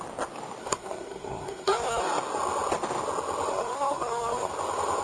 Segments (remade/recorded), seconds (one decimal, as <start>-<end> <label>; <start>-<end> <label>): 0.0-0.6 recorded; 0.6-2.0 remade; 2.0-3.5 recorded; 3.5-4.5 remade; 4.5-5.0 recorded